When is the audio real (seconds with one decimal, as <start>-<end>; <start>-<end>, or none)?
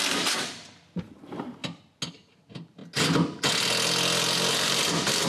1.6-2.1; 2.8-4.5